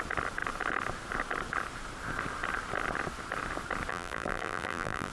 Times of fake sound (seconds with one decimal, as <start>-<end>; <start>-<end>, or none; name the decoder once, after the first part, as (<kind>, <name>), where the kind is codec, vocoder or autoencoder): 3.9-5.1 (vocoder, BigVGAN v2)